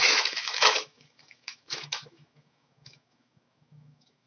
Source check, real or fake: fake